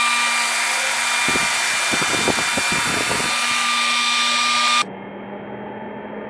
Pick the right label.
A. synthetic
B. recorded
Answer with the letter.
B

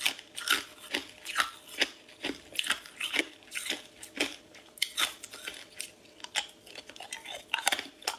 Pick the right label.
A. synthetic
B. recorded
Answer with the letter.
B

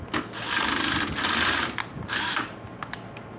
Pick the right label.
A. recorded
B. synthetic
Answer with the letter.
A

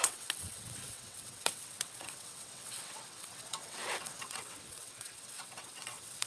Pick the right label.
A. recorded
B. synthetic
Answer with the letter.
B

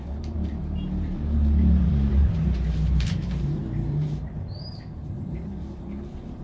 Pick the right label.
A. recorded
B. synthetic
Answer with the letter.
B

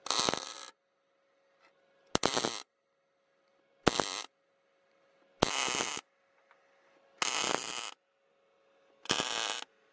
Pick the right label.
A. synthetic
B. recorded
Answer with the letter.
B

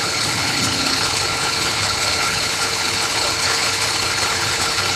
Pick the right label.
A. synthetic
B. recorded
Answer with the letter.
A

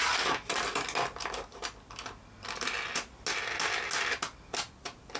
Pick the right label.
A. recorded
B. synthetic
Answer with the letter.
A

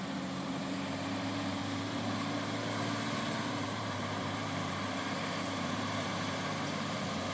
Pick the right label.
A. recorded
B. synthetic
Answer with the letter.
B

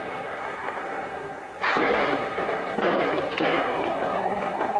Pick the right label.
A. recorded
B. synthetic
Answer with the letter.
B